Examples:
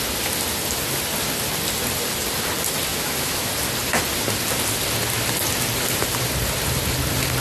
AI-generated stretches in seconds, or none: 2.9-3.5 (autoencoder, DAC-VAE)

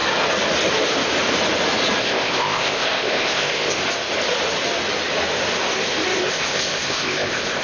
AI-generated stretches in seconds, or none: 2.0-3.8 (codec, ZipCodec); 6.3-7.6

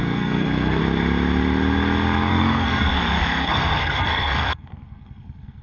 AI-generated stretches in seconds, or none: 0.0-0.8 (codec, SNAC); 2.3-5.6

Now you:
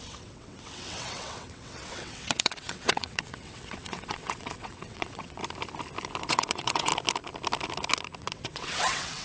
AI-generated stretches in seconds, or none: 0.0-5.4 (vocoder, WaveNeXt); 6.2-6.9; 8.2-9.2

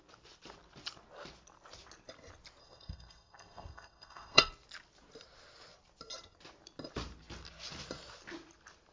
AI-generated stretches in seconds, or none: 2.6-4.5 (codec, SNAC)

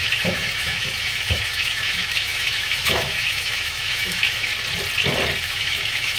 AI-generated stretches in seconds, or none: 0.0-4.5 (autoencoder, DAC-VAE); 5.4-6.2

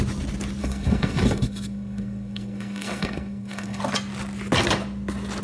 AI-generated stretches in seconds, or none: 0.6-3.8 (codec, SNAC)

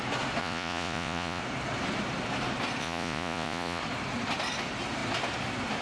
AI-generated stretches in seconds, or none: 0.4-1.4 (vocoder, Vocos); 2.8-3.8